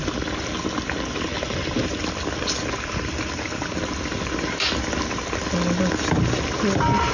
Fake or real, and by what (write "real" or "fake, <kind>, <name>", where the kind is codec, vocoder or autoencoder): real